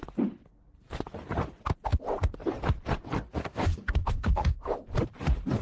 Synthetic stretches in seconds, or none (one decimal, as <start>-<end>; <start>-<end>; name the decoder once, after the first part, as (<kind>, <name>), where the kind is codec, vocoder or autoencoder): 3.4-4.7 (codec, DAC)